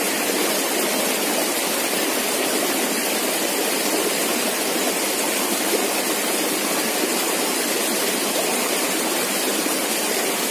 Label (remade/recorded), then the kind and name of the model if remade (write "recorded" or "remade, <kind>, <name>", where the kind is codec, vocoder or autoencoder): recorded